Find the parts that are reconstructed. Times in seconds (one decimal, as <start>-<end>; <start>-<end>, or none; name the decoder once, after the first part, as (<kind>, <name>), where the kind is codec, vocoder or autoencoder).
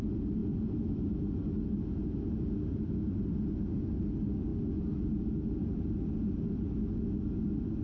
none